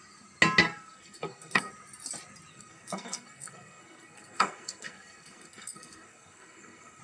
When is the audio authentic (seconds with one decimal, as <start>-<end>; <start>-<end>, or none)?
0.0-0.6; 1.7-2.5